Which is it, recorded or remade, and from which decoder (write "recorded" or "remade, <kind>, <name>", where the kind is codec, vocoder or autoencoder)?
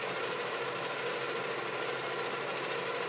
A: remade, vocoder, BigVGAN v2